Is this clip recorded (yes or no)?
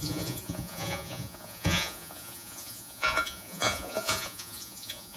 no